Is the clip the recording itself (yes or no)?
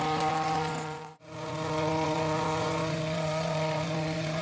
no